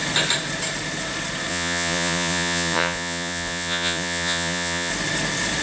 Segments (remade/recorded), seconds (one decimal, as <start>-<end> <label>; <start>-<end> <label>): 0.0-1.5 recorded; 1.5-4.9 remade; 4.9-5.6 recorded